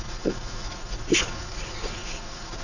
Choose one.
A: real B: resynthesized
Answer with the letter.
B